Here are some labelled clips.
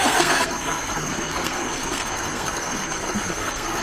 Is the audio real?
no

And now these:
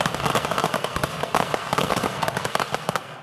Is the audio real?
no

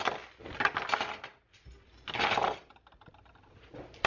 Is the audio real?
yes